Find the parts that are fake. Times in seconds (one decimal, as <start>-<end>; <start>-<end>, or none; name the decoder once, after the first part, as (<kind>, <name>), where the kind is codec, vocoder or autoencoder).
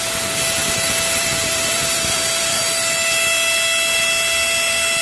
0.6-2.6 (vocoder, BigVGAN v2)